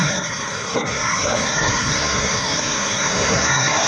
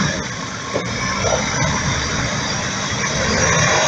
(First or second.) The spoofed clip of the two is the first